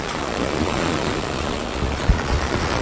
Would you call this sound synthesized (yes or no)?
yes